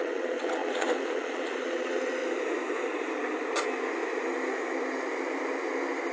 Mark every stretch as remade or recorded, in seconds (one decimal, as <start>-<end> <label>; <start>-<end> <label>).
0.0-2.2 remade; 2.2-6.1 recorded